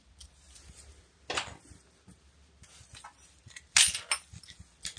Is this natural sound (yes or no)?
yes